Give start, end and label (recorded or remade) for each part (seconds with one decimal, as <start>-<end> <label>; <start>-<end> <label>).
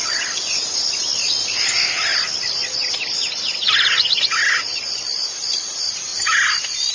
0.0-6.9 recorded